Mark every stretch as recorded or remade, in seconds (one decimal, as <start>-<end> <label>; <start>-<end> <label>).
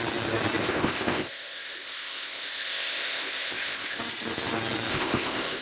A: 0.0-0.6 recorded; 0.6-4.0 remade; 4.0-4.9 recorded; 4.9-5.6 remade